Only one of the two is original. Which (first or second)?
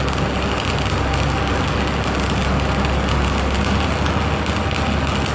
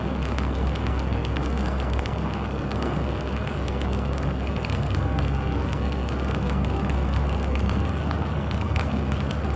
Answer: first